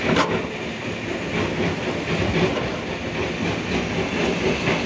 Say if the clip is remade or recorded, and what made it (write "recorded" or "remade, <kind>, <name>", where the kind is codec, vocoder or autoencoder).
recorded